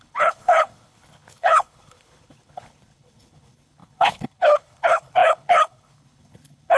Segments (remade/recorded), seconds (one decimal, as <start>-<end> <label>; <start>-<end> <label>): 0.0-6.8 remade